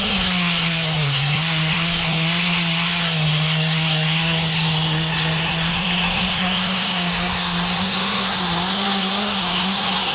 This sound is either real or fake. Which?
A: fake